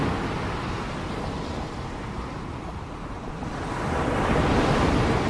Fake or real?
real